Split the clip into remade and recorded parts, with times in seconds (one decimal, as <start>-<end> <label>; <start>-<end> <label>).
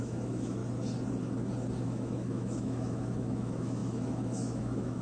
0.0-0.6 remade; 0.6-1.8 recorded; 1.8-5.0 remade